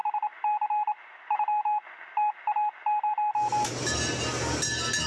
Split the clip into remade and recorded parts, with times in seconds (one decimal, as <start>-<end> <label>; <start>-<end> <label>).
0.0-5.1 recorded